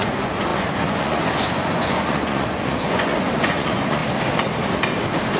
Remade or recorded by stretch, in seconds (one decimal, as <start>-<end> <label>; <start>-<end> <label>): 0.0-4.0 remade; 4.0-5.4 recorded